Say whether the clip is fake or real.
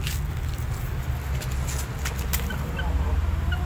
real